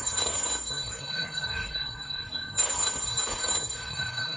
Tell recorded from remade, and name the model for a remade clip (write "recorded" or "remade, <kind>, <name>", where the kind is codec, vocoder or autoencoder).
remade, codec, SNAC